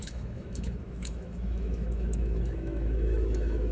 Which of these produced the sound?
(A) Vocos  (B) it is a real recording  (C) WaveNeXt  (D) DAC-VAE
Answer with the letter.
D